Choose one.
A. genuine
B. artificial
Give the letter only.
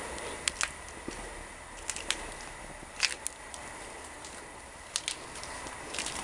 A